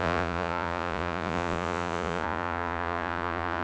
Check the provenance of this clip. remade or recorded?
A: remade